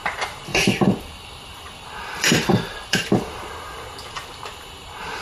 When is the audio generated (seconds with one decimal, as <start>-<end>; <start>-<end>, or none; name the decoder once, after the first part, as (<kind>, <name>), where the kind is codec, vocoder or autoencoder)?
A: 0.5-3.4 (vocoder, BigVGAN v2)